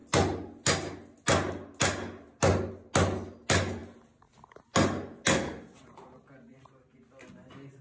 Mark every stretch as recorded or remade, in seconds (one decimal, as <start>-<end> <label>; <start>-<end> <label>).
0.0-7.8 recorded